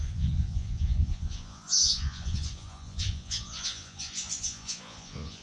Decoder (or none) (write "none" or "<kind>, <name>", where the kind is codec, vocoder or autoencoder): vocoder, Vocos